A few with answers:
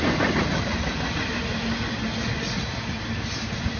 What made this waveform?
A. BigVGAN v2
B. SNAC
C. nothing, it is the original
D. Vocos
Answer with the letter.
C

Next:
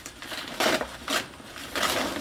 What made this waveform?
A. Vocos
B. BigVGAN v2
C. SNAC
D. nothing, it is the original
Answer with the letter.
B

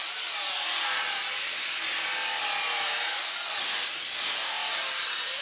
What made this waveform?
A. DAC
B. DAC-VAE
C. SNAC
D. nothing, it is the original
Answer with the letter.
D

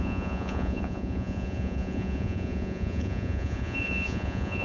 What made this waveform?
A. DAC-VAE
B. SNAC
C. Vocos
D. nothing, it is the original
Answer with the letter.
C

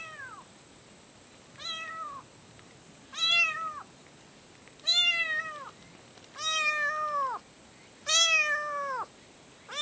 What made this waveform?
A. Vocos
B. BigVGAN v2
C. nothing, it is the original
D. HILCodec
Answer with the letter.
C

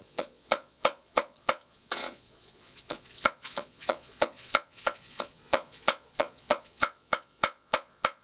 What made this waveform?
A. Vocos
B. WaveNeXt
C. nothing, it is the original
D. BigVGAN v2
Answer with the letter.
A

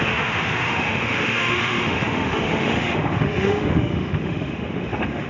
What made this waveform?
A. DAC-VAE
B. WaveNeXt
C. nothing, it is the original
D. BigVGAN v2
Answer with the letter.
A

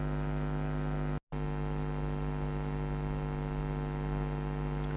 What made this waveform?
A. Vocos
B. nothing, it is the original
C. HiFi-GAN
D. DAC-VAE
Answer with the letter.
B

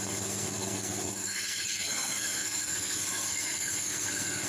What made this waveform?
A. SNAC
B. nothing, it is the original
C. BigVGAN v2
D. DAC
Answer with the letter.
A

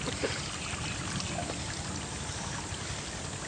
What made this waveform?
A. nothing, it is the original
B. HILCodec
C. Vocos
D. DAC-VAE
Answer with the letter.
A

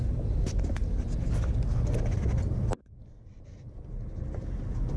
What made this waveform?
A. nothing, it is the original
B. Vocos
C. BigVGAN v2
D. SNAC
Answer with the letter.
A